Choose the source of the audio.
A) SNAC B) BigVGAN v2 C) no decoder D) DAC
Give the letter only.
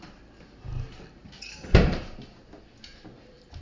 C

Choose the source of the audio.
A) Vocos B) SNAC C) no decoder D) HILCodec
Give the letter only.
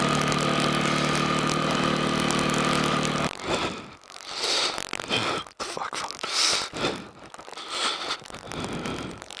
C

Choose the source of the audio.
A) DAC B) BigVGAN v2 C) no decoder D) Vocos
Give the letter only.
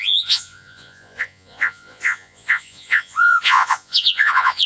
D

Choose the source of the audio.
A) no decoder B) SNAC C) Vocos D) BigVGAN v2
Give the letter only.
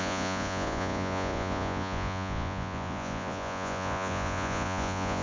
C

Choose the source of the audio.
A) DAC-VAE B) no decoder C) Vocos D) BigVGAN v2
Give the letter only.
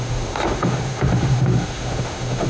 A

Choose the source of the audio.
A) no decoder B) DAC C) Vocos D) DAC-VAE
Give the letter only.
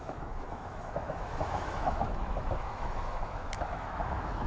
D